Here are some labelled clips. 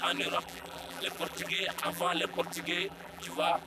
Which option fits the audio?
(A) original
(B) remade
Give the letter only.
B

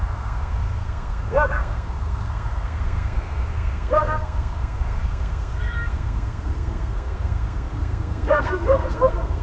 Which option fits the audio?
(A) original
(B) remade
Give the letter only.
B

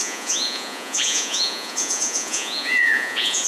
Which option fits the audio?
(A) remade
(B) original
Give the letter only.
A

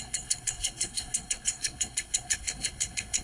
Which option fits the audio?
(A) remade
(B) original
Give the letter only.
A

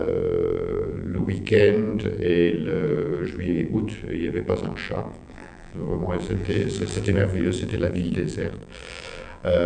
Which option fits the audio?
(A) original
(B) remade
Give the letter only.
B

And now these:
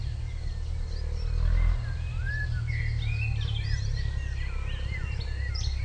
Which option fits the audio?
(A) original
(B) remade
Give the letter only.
A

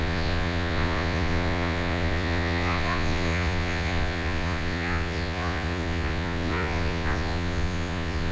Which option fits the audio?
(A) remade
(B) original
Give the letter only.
A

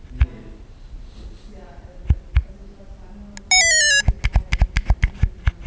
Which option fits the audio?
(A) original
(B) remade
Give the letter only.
A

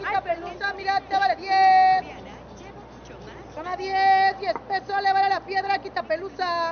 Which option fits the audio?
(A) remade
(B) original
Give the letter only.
B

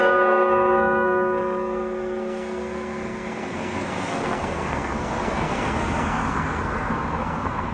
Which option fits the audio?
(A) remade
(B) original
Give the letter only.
A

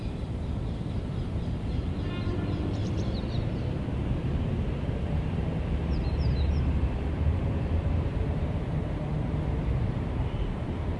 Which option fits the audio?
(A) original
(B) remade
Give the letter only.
B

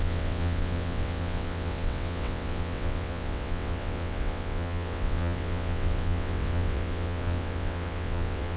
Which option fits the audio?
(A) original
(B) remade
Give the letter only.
B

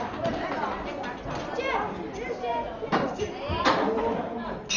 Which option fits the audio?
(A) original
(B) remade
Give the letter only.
A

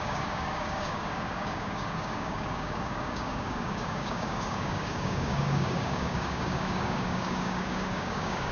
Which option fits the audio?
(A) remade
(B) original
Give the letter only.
A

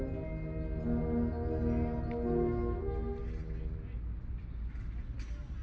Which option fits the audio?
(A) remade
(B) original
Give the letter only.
B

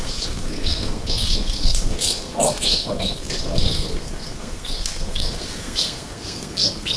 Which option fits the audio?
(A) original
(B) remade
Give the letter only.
B